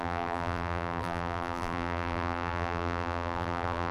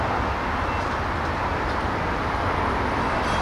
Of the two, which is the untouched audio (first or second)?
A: second